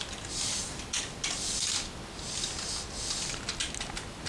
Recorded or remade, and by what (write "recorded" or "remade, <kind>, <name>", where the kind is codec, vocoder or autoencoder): recorded